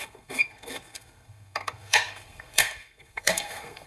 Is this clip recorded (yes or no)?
no